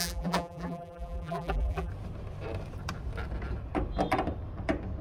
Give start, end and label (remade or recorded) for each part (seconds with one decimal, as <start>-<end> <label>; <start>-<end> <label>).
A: 0.0-1.9 remade; 1.9-5.0 recorded